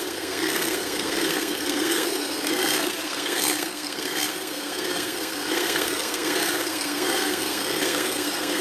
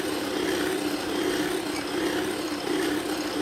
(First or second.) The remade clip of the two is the first